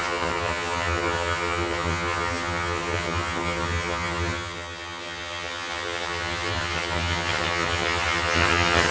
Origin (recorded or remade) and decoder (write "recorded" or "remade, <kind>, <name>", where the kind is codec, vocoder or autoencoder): remade, vocoder, HiFi-GAN